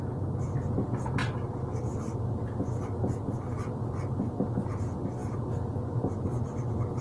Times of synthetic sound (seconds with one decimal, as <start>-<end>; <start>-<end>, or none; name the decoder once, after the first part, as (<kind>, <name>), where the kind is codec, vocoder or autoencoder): none

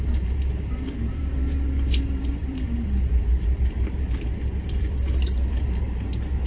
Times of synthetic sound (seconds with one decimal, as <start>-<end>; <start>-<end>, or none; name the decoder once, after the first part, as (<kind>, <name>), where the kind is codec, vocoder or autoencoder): 0.0-6.5 (vocoder, BigVGAN v2)

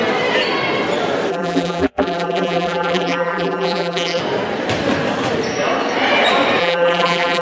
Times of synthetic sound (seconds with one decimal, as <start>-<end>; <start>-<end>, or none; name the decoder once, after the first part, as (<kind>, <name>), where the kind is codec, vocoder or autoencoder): 1.3-4.2 (vocoder, BigVGAN v2); 6.6-7.4

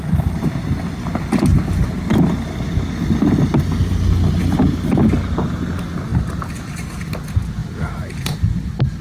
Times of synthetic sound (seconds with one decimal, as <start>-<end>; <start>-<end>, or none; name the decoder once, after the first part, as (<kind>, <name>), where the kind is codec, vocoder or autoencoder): none

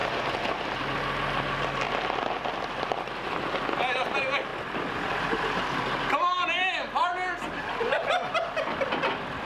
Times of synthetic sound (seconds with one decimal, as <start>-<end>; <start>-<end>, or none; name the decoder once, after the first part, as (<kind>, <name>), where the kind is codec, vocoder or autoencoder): 4.5-5.4 (vocoder, BigVGAN v2)

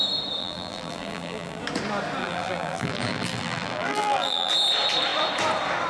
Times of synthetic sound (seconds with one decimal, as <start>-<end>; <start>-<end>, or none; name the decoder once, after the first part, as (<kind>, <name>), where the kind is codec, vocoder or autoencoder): 0.4-1.6 (vocoder, BigVGAN v2); 2.2-4.5